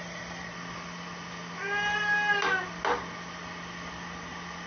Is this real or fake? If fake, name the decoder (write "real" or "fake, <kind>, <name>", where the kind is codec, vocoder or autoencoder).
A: real